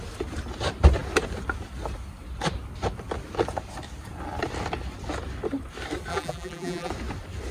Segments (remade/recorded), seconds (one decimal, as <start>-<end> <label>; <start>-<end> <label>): 0.0-6.1 recorded; 6.1-6.9 remade; 6.9-7.5 recorded

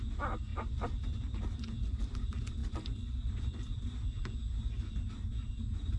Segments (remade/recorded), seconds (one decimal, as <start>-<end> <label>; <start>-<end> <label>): 0.0-0.5 recorded; 0.5-1.5 remade; 1.5-6.0 recorded

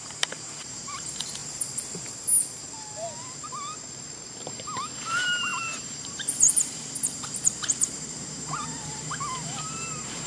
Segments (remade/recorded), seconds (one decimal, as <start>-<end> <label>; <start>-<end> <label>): 0.0-1.4 remade; 1.4-4.5 recorded; 4.5-10.3 remade

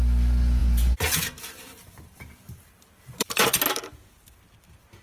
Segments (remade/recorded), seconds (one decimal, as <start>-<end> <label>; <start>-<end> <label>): 0.0-0.6 recorded; 0.6-3.6 remade; 3.6-5.0 recorded

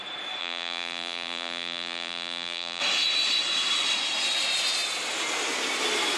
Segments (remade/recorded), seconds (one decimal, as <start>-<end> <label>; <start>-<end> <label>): 0.0-0.4 recorded; 0.4-2.8 remade; 2.8-6.2 recorded

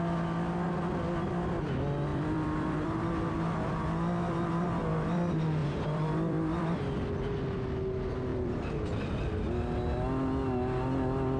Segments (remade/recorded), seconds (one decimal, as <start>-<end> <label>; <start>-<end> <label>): 0.0-2.1 recorded; 2.1-3.7 remade; 3.7-5.6 recorded; 5.6-6.8 remade; 6.8-8.3 recorded; 8.3-9.3 remade; 9.3-11.4 recorded